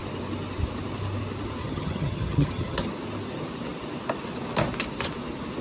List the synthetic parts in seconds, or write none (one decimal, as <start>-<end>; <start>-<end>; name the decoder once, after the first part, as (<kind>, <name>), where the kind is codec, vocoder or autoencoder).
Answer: 1.6-2.9 (vocoder, HiFi-GAN)